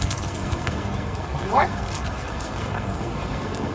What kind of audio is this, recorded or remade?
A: remade